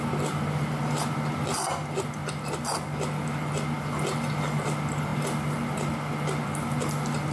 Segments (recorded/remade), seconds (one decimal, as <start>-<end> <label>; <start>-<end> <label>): 0.0-7.3 recorded